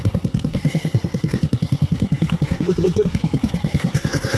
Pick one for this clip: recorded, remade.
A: remade